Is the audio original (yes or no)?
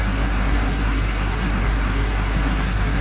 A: no